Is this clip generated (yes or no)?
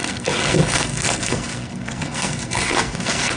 yes